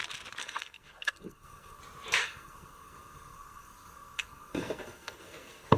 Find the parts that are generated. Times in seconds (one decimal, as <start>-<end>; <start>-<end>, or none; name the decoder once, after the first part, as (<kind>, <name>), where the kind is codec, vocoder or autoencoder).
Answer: 0.4-1.8 (codec, SNAC); 2.2-5.8